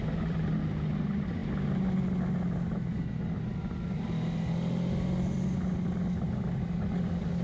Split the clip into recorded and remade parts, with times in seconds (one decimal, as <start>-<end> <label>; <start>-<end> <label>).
0.0-7.4 recorded